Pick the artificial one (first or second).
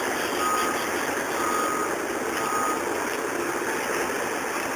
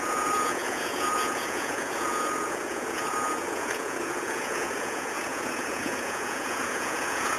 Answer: second